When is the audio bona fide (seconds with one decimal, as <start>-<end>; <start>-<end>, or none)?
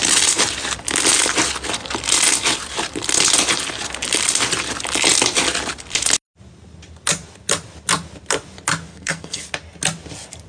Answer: 0.0-8.9; 9.4-10.5